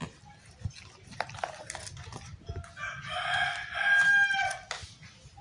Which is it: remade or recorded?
recorded